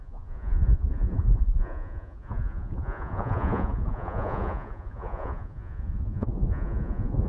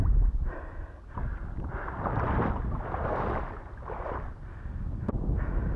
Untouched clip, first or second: second